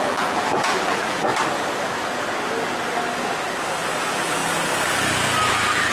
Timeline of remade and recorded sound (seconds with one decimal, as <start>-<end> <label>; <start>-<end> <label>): 0.0-1.3 remade; 1.3-4.0 recorded; 4.0-4.4 remade; 4.4-5.4 recorded; 5.4-5.9 remade